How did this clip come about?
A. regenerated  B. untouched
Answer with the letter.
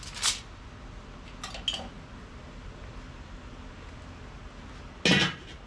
B